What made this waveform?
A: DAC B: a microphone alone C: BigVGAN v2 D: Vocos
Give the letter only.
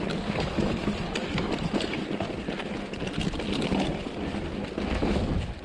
B